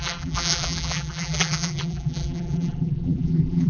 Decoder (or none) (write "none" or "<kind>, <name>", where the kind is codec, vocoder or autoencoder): vocoder, BigVGAN v2